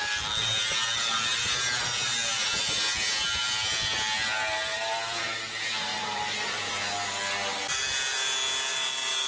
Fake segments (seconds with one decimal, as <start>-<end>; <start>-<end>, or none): 4.7-5.2; 5.9-6.7; 8.7-9.3